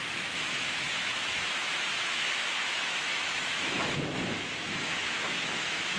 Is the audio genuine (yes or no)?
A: no